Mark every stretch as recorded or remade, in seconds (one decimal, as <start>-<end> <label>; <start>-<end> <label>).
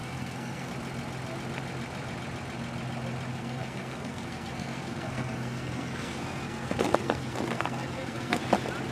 0.0-0.7 remade; 0.7-3.3 recorded; 3.3-8.4 remade; 8.4-8.9 recorded